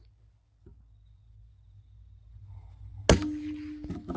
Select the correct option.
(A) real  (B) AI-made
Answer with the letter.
A